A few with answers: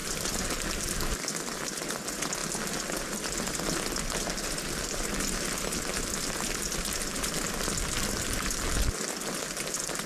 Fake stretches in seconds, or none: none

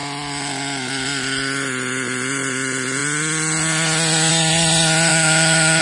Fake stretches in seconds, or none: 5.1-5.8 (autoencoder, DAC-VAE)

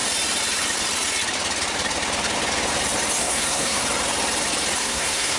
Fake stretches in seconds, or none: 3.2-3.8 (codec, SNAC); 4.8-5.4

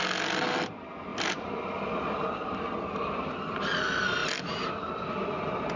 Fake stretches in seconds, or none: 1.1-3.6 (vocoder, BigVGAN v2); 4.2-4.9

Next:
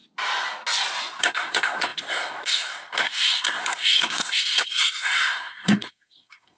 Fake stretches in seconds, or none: 1.2-6.6 (codec, SNAC)